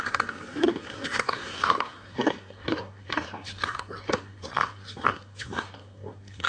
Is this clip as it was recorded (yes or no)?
no